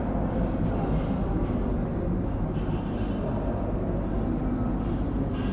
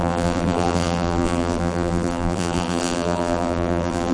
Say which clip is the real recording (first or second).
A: first